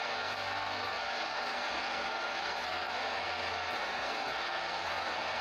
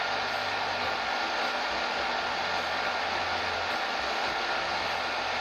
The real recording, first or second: second